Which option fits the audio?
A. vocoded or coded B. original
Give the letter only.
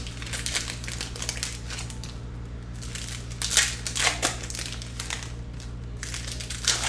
B